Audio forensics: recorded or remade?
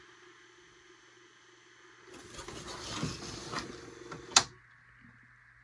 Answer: recorded